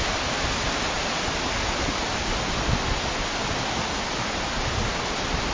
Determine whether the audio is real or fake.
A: real